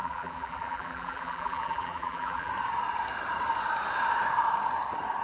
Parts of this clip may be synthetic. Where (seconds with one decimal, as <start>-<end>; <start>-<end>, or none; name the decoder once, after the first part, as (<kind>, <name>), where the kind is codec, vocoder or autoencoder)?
0.0-2.5 (vocoder, BigVGAN v2)